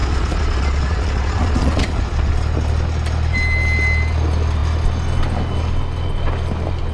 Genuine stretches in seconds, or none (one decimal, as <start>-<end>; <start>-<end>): 2.3-6.9